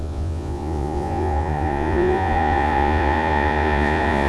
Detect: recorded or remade remade